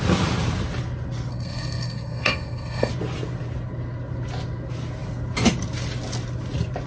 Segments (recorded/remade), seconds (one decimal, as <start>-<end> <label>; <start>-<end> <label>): 0.0-1.3 recorded; 1.3-2.9 remade; 2.9-6.9 recorded